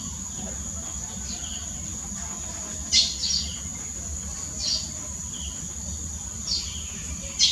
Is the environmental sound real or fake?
real